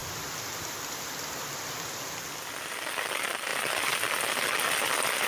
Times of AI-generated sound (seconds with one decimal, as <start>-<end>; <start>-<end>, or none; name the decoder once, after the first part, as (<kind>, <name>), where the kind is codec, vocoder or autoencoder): 0.0-2.7 (vocoder, BigVGAN v2); 3.5-4.4